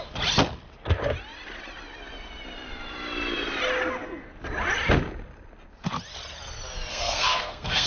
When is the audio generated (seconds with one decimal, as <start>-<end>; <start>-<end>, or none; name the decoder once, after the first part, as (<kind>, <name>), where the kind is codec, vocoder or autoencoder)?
6.9-7.9 (codec, SNAC)